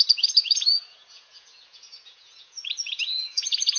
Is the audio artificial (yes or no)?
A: yes